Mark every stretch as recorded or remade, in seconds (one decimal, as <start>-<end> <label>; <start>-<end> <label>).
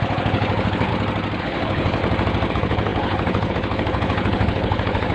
0.0-0.9 remade; 0.9-1.4 recorded; 1.4-2.0 remade; 2.0-2.5 recorded; 2.5-5.1 remade